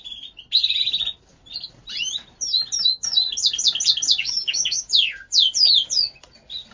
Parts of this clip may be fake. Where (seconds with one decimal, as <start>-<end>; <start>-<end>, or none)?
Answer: 4.2-4.9